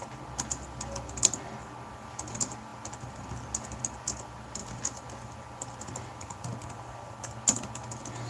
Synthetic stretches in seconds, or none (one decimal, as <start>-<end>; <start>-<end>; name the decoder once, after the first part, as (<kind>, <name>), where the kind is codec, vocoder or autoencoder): none